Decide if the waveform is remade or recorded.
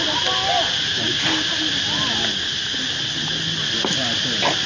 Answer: recorded